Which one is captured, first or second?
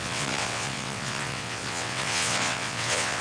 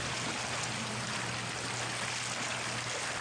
second